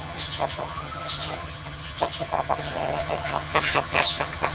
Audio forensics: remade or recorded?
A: remade